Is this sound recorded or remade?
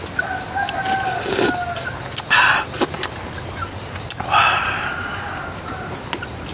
recorded